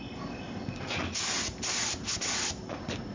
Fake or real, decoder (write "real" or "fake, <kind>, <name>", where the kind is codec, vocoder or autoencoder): real